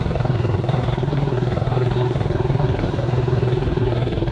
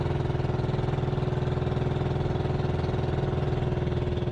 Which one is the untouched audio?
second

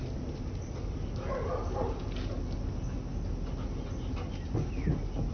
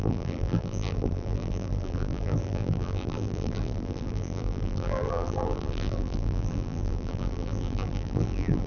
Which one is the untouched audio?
first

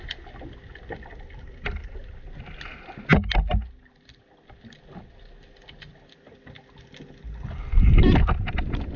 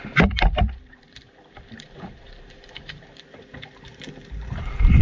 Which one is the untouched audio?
first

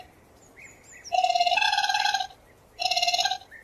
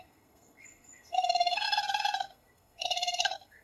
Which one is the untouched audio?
first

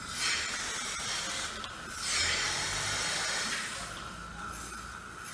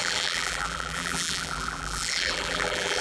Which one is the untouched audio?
first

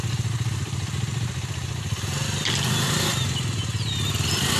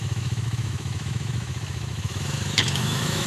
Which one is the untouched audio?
first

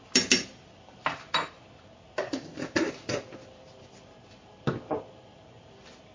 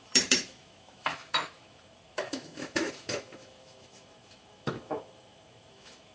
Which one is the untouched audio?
first